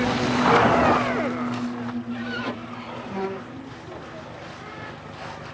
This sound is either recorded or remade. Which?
recorded